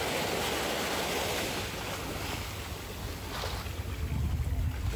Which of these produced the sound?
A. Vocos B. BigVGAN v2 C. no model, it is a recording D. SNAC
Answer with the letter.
C